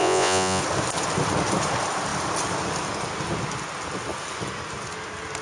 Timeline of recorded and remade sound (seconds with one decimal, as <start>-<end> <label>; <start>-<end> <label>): 0.0-0.6 remade; 0.6-5.4 recorded